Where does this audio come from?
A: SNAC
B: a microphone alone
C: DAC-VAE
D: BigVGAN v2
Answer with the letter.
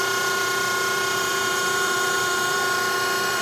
D